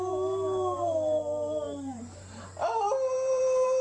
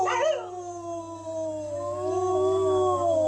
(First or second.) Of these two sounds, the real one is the second